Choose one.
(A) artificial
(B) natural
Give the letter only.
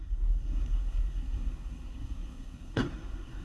A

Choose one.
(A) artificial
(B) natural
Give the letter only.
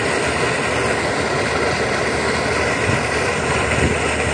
B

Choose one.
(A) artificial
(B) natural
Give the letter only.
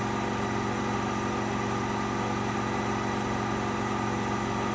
B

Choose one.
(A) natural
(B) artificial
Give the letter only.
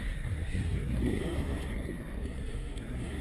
B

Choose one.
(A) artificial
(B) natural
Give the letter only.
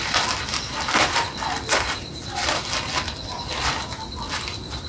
B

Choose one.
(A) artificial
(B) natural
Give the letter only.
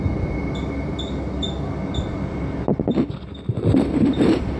B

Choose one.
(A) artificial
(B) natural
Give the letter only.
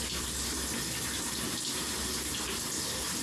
B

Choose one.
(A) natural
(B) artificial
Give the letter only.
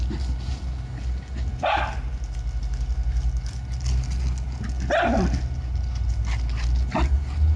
A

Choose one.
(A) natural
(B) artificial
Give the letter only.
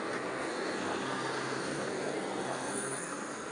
B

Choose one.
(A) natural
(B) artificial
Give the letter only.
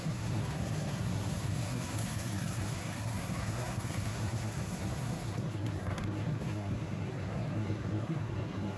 B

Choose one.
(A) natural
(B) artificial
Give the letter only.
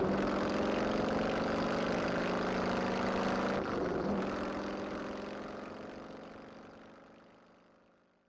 A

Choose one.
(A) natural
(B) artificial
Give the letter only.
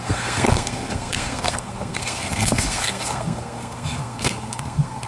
B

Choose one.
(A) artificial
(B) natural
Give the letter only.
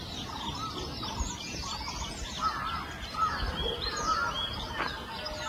B